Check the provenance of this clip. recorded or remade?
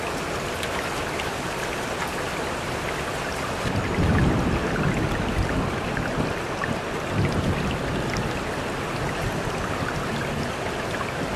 recorded